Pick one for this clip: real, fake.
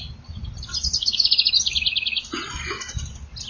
real